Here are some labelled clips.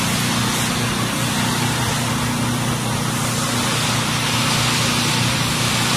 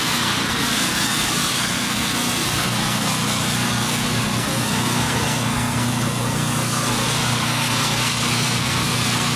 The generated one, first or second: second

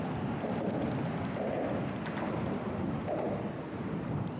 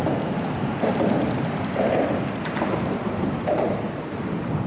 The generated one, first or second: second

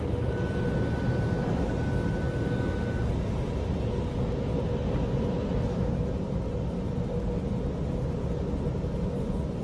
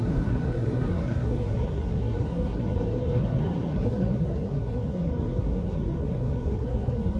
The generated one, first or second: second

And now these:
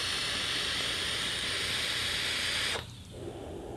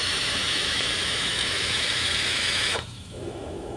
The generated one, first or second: second